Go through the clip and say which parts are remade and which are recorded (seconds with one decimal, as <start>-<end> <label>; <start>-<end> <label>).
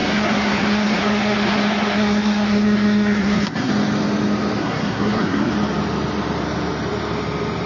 0.0-3.7 remade; 3.7-4.6 recorded; 4.6-5.5 remade; 5.5-7.7 recorded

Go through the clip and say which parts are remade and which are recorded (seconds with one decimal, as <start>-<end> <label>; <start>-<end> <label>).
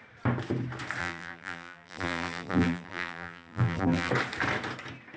0.0-1.0 recorded; 1.0-4.1 remade; 4.1-5.2 recorded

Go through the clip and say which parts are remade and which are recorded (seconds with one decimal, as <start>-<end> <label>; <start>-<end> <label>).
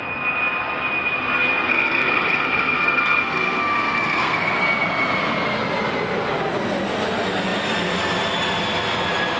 0.0-1.7 recorded; 1.7-4.6 remade; 4.6-9.4 recorded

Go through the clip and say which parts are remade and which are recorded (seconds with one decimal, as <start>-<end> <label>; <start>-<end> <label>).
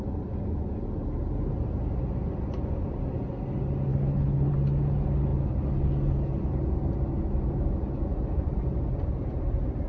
0.0-3.9 recorded; 3.9-4.5 remade; 4.5-9.9 recorded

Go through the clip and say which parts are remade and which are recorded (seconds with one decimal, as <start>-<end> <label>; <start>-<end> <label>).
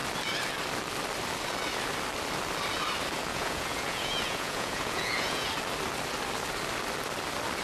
0.0-3.3 recorded; 3.3-5.5 remade; 5.5-7.6 recorded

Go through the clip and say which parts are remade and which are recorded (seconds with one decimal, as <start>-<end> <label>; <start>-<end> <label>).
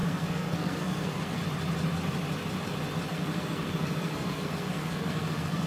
0.0-1.4 remade; 1.4-3.1 recorded; 3.1-5.7 remade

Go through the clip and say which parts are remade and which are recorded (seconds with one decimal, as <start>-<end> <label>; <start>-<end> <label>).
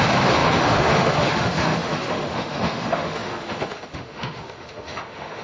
0.0-5.4 remade